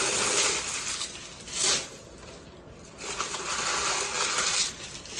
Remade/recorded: recorded